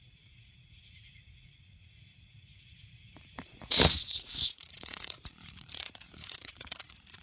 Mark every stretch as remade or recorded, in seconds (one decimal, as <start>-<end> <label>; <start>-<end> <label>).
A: 0.0-7.2 remade